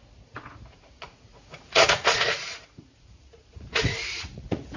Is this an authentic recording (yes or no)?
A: no